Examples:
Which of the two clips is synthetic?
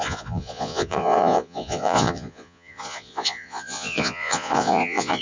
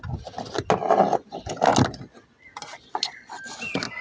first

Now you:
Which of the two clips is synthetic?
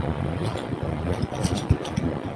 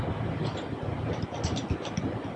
first